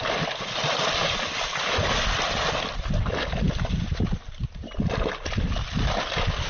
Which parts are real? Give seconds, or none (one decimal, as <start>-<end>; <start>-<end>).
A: 0.0-6.5